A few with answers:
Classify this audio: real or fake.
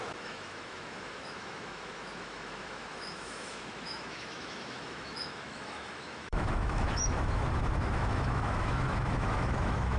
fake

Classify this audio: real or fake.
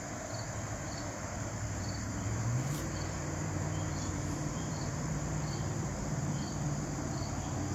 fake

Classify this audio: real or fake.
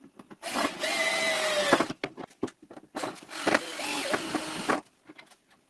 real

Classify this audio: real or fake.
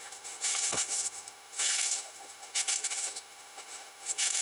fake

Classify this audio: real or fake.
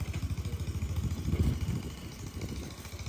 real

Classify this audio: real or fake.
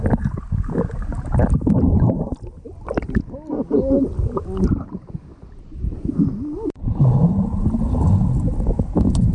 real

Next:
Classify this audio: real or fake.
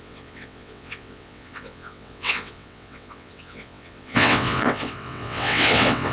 fake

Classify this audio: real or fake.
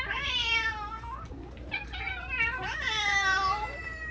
fake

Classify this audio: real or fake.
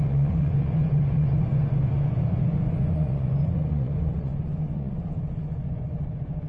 fake